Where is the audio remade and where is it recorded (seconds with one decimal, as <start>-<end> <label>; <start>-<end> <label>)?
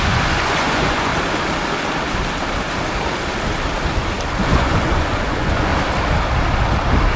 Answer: 0.0-1.1 remade; 1.1-4.4 recorded; 4.4-5.7 remade; 5.7-7.2 recorded